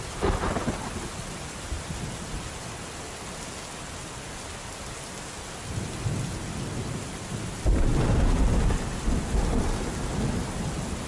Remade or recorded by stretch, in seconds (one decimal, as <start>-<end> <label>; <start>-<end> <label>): 0.0-11.1 recorded